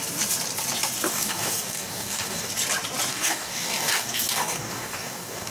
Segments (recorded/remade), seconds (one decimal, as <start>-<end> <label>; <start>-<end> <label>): 0.0-1.1 recorded; 1.1-2.5 remade; 2.5-3.1 recorded; 3.1-5.5 remade